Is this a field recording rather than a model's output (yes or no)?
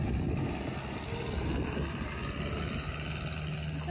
yes